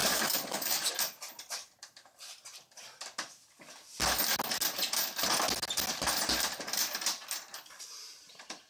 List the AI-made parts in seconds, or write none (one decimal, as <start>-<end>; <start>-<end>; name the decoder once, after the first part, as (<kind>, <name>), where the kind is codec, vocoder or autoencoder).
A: 0.0-0.9 (codec, DAC)